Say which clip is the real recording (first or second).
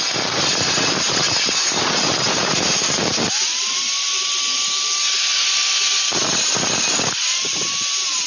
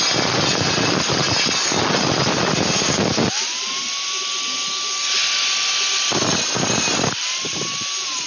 second